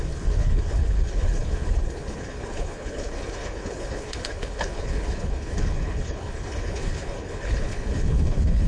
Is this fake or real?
fake